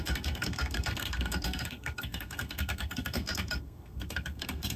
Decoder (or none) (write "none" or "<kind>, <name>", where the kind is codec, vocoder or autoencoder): codec, SNAC